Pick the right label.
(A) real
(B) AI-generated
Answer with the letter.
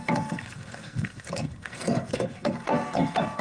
B